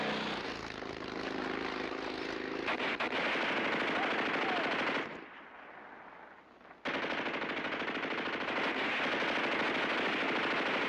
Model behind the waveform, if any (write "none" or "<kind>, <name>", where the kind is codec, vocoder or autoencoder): none